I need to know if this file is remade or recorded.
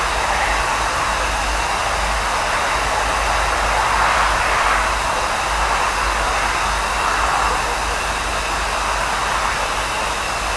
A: recorded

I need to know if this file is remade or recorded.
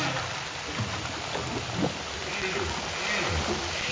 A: recorded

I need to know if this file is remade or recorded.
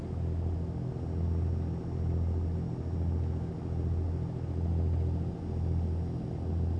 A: recorded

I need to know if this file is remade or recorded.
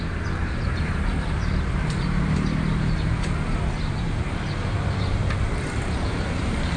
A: remade